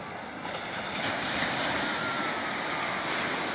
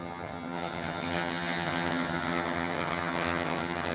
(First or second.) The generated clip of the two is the second